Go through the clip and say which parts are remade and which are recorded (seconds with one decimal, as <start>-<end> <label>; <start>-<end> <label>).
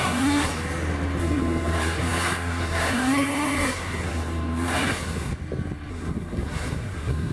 0.0-0.5 remade; 0.5-1.2 recorded; 1.2-5.3 remade; 5.3-5.9 recorded; 5.9-7.3 remade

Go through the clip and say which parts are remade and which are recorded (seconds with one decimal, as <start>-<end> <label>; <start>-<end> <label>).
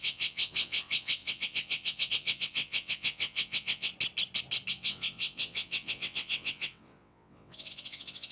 0.0-3.9 remade; 3.9-4.7 recorded; 4.7-8.3 remade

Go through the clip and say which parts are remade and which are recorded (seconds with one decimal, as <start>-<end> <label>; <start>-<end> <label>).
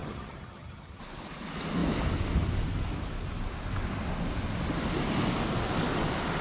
0.0-1.0 remade; 1.0-6.4 recorded